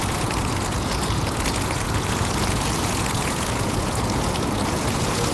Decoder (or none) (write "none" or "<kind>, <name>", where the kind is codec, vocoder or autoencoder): vocoder, Vocos